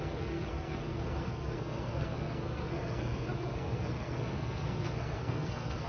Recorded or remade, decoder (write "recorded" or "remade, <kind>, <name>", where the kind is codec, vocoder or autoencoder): remade, codec, SNAC